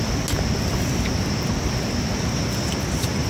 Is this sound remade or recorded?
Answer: recorded